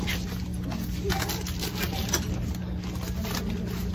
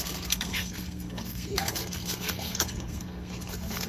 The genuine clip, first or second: first